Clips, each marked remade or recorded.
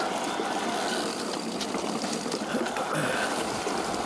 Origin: recorded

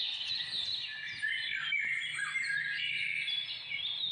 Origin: recorded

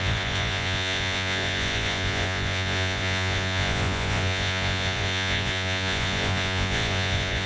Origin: remade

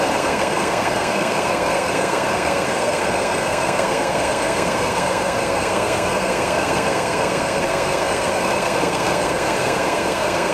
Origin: remade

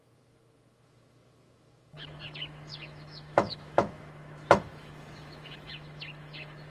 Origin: remade